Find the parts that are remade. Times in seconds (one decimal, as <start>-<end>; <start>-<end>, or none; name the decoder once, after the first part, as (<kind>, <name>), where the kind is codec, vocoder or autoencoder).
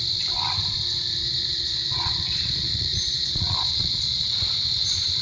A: 1.2-4.3 (vocoder, Vocos)